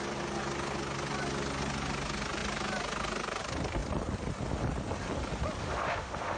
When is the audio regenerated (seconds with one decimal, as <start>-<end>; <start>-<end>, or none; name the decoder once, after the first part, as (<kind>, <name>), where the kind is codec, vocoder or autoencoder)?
5.6-6.4 (autoencoder, DAC-VAE)